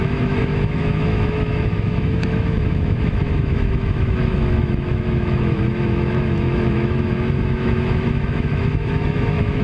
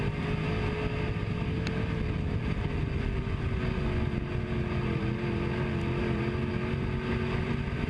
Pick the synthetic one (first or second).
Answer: first